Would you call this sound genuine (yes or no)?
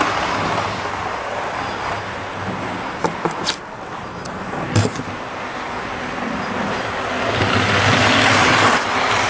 yes